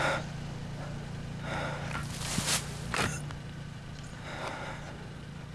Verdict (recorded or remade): recorded